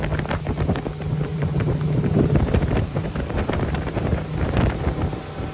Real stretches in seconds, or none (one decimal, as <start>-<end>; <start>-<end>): 0.0-1.3; 4.6-5.5